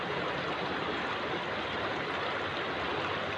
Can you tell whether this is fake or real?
real